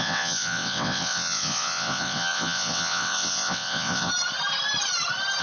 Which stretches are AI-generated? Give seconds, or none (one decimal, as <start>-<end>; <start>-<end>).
0.0-4.1